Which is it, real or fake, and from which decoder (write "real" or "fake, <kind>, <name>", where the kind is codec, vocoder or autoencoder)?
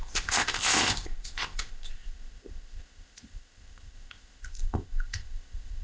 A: fake, codec, ZipCodec